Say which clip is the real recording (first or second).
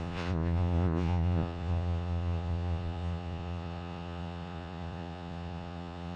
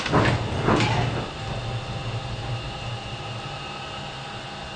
second